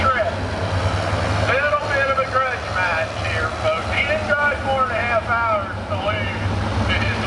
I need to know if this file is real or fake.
real